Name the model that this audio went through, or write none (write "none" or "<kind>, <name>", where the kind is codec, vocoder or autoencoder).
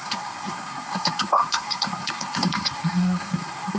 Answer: codec, SNAC